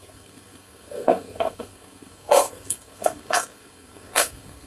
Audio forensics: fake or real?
fake